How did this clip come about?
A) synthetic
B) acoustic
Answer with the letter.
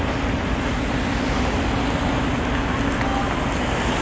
B